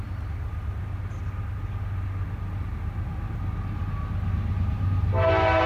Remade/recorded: recorded